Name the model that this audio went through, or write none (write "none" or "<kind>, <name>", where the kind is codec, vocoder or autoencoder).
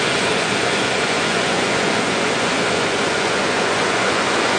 vocoder, Vocos